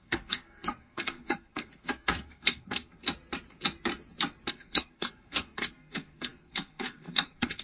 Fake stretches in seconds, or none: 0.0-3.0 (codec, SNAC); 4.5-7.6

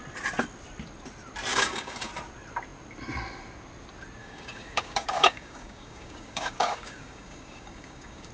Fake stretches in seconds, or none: 1.5-2.1 (codec, DAC); 4.2-8.3

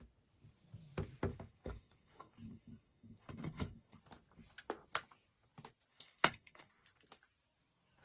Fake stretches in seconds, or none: 1.3-4.0 (codec, DAC); 5.9-6.7

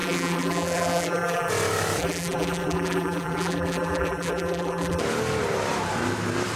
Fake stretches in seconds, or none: 0.0-1.5 (vocoder, BigVGAN v2); 2.0-5.0

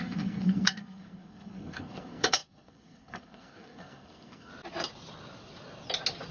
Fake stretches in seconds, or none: 0.0-4.5 (codec, SNAC)

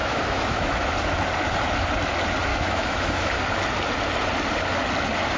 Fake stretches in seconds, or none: 0.0-0.9 (autoencoder, DAC-VAE); 2.5-3.4

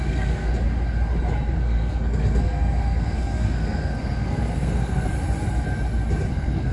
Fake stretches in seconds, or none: 0.0-0.5 (codec, SNAC); 1.5-5.1; 6.3-6.7